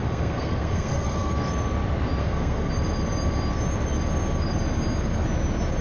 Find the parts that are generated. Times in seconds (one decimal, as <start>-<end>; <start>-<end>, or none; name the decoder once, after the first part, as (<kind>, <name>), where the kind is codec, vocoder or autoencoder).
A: 0.0-1.3 (codec, SNAC); 2.2-2.7